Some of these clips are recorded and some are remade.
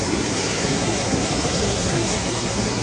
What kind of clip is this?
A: remade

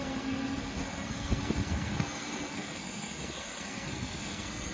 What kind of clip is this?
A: remade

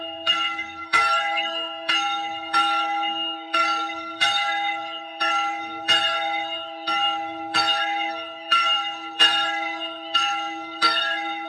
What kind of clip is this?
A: remade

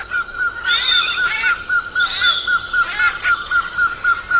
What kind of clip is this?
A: recorded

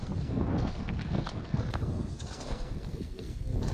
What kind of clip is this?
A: remade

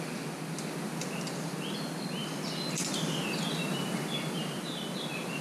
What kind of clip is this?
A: recorded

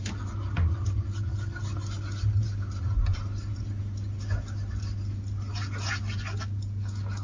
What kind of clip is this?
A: recorded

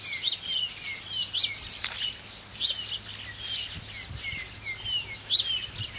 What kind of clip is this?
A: recorded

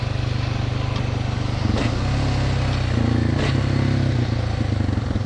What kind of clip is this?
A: recorded